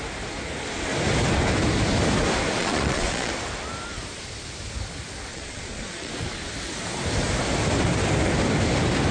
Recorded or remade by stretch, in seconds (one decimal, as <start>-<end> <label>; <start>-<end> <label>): 0.0-2.6 recorded; 2.6-3.3 remade; 3.3-5.3 recorded; 5.3-6.1 remade; 6.1-9.1 recorded